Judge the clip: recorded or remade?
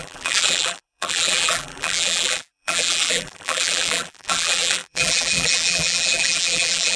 remade